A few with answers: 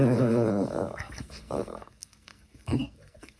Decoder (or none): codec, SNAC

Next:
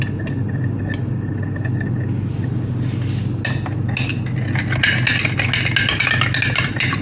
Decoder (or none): none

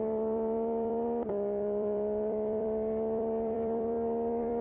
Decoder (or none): vocoder, BigVGAN v2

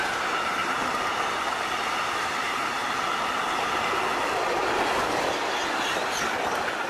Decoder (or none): none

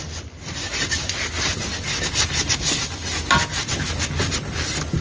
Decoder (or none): none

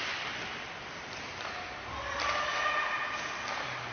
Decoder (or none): none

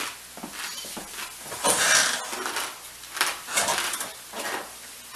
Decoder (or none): none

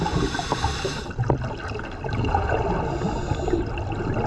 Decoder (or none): none